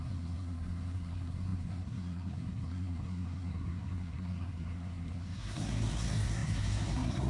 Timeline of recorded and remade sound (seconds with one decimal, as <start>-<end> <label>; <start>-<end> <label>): 0.0-7.3 remade